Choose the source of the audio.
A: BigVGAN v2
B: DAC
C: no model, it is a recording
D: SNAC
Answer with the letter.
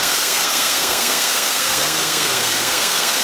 D